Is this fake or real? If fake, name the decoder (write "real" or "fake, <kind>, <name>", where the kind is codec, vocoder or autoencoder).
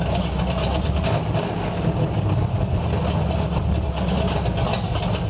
real